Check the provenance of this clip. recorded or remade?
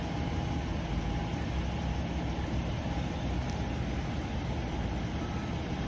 recorded